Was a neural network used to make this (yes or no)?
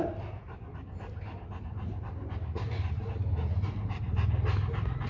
no